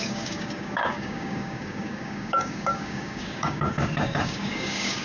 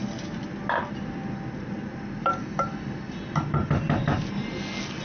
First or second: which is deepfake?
first